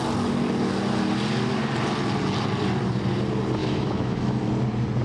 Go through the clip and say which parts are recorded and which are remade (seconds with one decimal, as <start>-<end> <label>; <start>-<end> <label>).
0.0-3.6 recorded; 3.6-4.5 remade; 4.5-5.0 recorded